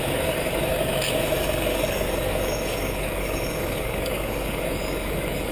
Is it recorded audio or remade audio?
remade